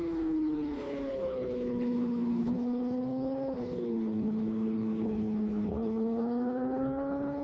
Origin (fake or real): fake